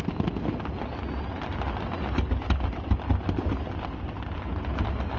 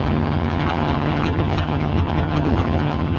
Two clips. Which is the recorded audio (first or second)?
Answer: first